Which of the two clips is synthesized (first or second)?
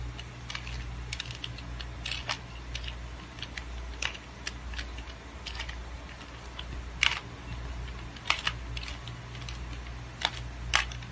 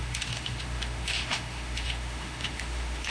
second